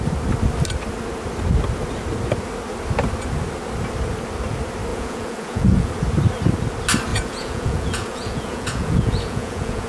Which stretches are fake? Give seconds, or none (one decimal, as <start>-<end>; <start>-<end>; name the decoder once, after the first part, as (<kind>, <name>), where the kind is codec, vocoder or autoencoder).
4.9-5.9 (vocoder, Vocos); 7.1-9.9